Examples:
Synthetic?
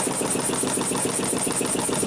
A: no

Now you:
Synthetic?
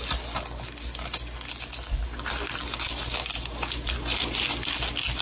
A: no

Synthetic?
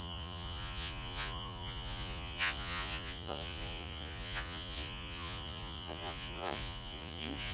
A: yes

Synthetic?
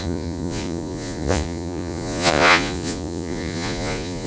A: yes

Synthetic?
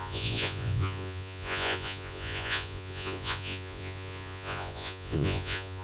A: yes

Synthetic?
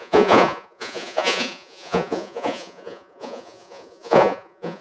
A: yes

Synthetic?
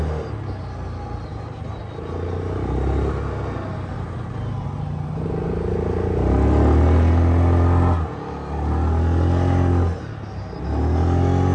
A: no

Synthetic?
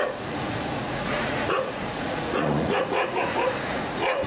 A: yes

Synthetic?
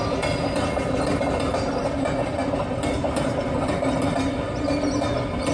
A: no